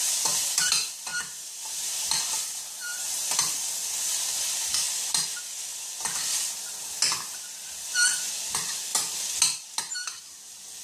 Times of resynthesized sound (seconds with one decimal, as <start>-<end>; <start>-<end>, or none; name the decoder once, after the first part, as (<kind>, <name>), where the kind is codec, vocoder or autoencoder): none